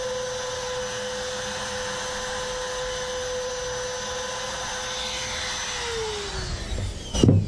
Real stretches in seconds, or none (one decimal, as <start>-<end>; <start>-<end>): 0.0-7.5